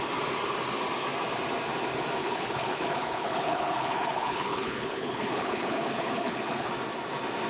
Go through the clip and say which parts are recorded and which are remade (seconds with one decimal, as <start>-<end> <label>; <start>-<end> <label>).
0.0-2.2 recorded; 2.2-6.7 remade; 6.7-7.5 recorded